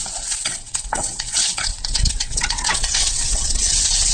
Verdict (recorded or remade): remade